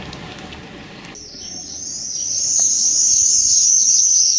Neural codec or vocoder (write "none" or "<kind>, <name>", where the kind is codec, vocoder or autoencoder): vocoder, BigVGAN v2